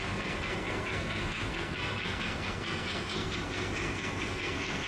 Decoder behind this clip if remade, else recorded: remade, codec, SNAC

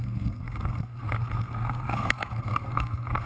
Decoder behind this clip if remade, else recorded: remade, codec, SNAC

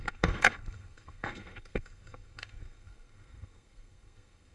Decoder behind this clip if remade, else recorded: remade, codec, SNAC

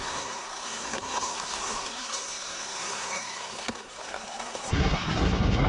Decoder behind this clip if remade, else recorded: remade, codec, SNAC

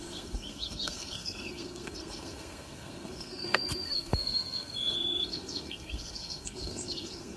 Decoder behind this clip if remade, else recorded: remade, codec, SNAC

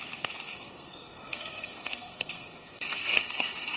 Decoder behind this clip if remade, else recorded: remade, codec, SNAC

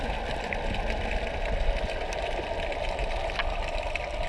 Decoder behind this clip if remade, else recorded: recorded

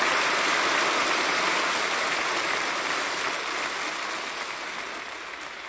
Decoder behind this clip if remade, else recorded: recorded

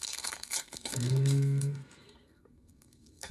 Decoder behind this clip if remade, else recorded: remade, codec, SNAC